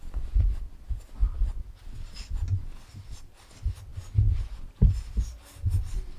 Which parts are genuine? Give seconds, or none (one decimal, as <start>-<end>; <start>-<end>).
0.0-1.2; 3.3-6.2